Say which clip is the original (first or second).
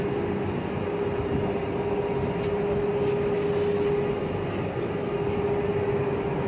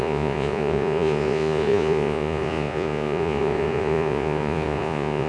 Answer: first